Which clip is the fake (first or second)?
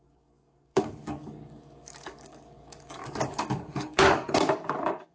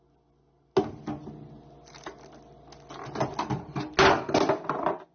first